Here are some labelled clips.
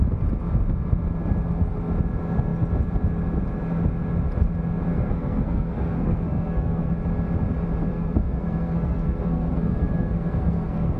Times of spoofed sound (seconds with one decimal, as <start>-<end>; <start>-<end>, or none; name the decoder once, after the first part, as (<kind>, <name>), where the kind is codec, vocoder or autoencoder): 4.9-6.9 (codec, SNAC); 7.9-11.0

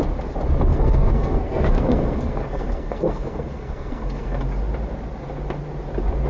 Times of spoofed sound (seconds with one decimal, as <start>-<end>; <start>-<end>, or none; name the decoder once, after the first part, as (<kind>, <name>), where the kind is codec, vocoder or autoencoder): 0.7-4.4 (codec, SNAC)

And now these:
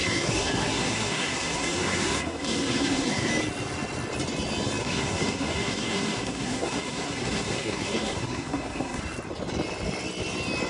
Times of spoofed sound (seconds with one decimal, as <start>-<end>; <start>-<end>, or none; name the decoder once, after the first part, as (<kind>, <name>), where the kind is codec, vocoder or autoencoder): 0.0-3.3 (codec, SNAC); 4.8-9.0

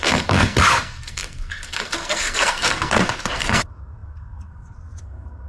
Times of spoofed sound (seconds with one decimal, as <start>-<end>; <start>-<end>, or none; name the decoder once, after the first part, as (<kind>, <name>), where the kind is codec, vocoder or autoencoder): 0.0-5.5 (codec, SNAC)

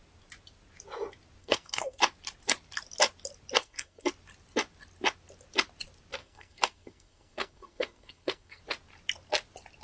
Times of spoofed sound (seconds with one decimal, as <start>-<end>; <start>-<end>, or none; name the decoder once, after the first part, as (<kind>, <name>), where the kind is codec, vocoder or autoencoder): 1.4-2.0 (codec, SNAC); 3.6-4.1; 6.2-8.6

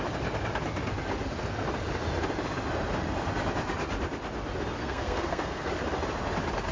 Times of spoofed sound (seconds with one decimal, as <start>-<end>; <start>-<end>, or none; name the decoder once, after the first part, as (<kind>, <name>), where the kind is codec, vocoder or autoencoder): 4.8-5.7 (codec, SNAC)